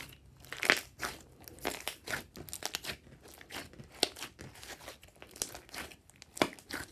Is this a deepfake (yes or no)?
no